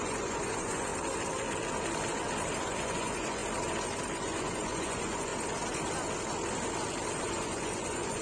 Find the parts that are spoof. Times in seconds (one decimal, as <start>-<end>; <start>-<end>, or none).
0.0-0.9; 2.6-3.4; 4.2-5.3; 7.2-8.2